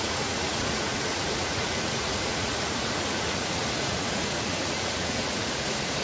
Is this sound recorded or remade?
remade